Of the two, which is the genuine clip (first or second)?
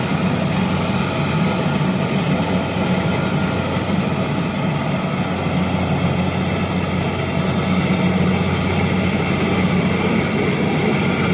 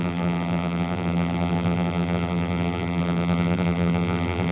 first